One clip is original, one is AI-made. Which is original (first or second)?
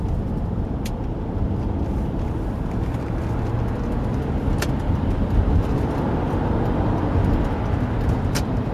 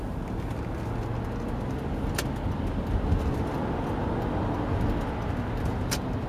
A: second